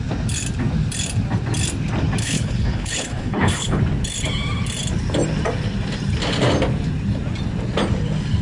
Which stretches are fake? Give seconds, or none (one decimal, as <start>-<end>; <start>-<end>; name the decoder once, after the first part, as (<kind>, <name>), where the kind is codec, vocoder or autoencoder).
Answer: 2.2-3.8 (codec, HILCodec)